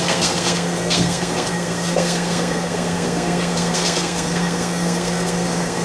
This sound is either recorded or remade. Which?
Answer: remade